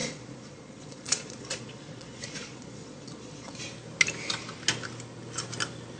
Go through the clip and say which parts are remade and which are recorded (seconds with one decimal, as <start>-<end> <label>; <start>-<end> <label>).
0.0-3.6 remade; 3.6-6.0 recorded